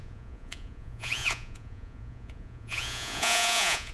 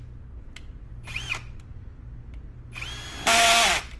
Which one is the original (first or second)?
second